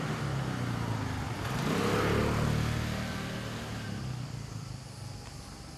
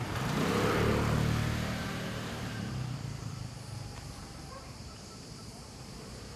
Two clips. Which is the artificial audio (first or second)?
second